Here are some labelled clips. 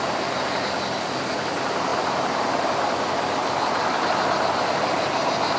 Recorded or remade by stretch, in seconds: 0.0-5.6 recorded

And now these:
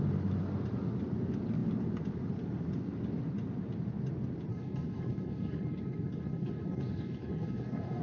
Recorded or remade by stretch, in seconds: 0.0-4.5 recorded; 4.5-8.0 remade